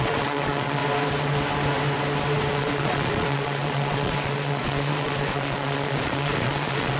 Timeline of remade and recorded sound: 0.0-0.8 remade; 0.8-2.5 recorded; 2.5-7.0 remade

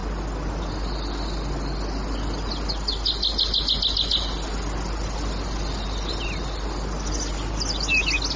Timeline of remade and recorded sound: 0.0-8.4 recorded

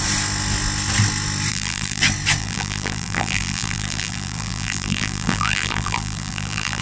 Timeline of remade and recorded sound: 0.0-1.5 recorded; 1.5-2.0 remade; 2.0-2.4 recorded; 2.4-6.8 remade

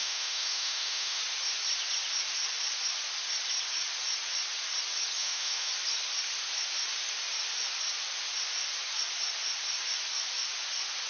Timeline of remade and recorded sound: 0.0-1.2 remade; 1.2-5.2 recorded; 5.2-5.7 remade; 5.7-11.1 recorded

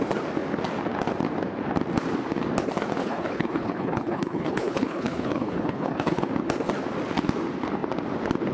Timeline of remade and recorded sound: 0.0-3.0 recorded; 3.0-6.3 remade; 6.3-8.5 recorded

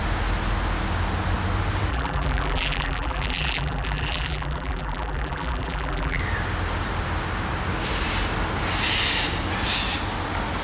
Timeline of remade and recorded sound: 0.0-1.9 recorded; 1.9-6.2 remade; 6.2-10.6 recorded

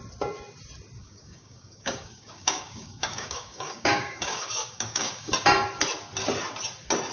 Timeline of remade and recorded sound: 0.0-1.0 recorded; 1.0-5.3 remade; 5.3-7.1 recorded

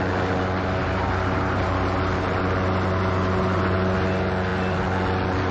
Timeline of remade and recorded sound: 0.0-0.8 recorded; 0.8-2.4 remade; 2.4-5.5 recorded